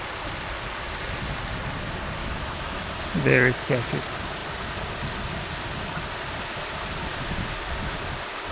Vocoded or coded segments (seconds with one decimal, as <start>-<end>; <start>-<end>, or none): 2.2-2.9